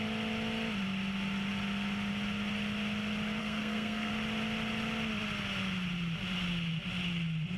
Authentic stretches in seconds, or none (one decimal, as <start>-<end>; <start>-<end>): 0.0-3.4; 4.1-7.6